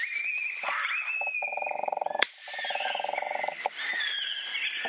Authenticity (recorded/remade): recorded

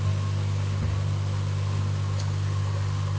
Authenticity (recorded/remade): recorded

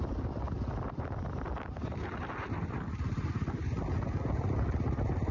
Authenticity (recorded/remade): recorded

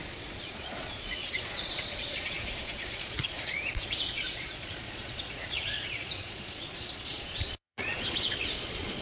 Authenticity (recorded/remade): remade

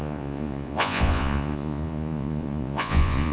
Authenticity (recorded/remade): remade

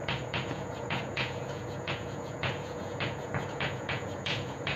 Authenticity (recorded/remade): remade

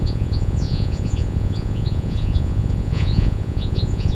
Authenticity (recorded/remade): remade